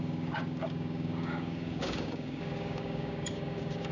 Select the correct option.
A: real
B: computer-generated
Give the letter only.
B